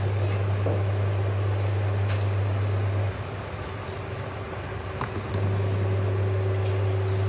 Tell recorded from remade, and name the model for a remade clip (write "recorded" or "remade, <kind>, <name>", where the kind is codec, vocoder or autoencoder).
recorded